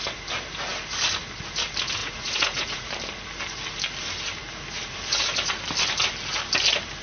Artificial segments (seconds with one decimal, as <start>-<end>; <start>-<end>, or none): 2.0-2.9